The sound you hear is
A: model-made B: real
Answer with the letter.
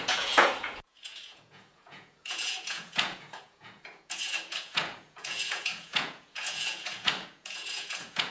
A